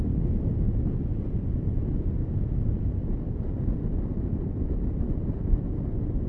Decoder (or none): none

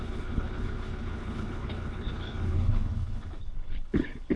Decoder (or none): codec, HILCodec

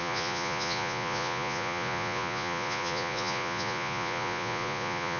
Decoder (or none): vocoder, Vocos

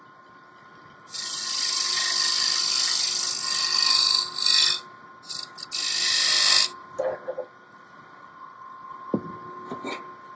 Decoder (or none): none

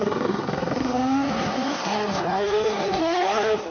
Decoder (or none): codec, SNAC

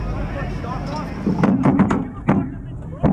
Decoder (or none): none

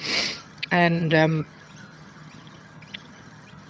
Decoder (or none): vocoder, HiFi-GAN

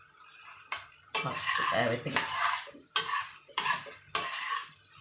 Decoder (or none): none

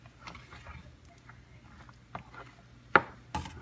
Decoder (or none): none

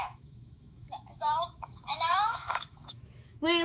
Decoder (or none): autoencoder, DAC-VAE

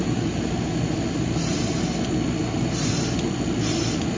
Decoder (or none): vocoder, BigVGAN v2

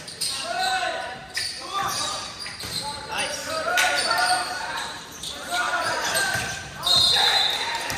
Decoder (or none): vocoder, BigVGAN v2